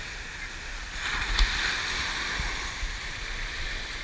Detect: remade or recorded recorded